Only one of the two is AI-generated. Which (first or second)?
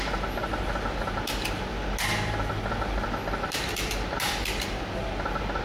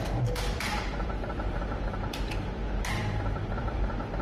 second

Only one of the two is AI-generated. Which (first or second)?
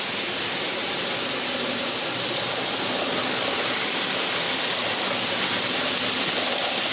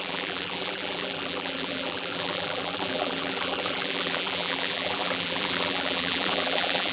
second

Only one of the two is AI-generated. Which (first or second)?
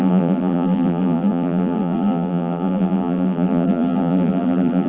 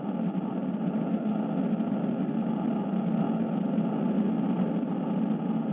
first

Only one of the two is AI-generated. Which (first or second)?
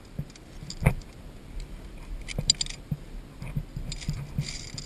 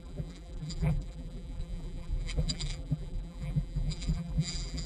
second